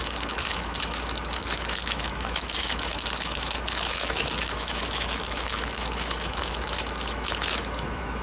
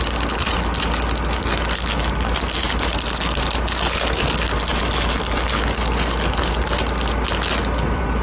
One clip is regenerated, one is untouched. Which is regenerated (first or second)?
first